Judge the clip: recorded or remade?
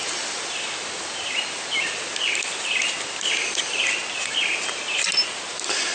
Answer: recorded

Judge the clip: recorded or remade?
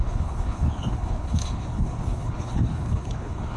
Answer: remade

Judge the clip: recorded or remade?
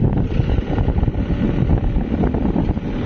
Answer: recorded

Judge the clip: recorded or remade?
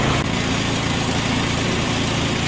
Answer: recorded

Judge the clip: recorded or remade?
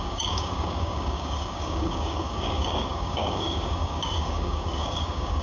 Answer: remade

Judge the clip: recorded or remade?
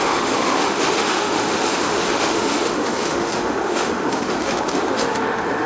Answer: remade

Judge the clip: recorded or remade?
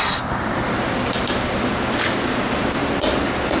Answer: recorded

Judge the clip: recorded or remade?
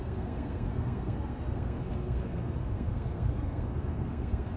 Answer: remade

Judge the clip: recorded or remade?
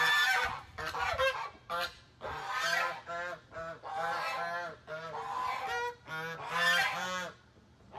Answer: recorded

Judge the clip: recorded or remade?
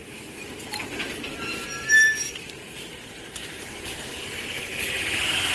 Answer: remade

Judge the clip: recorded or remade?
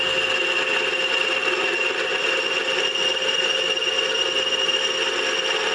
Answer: recorded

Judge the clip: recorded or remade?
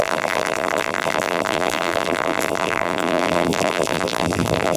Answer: remade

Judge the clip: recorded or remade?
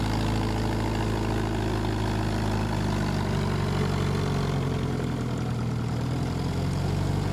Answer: recorded